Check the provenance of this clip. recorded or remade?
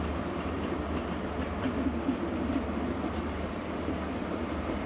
recorded